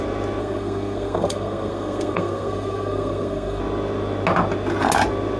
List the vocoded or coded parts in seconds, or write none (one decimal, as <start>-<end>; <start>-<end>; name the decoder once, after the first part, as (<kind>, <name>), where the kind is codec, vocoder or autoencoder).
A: 0.4-3.6 (codec, SNAC)